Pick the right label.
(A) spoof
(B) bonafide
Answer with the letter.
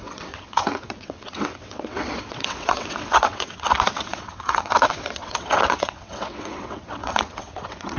A